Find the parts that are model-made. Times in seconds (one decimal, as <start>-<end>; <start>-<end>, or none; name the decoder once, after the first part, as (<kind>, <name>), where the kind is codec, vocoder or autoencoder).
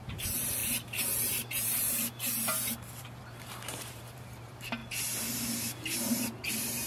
0.0-6.9 (vocoder, BigVGAN v2)